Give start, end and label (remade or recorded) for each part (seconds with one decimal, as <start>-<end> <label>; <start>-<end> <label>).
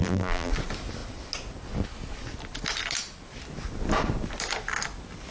0.0-0.5 remade; 0.5-5.3 recorded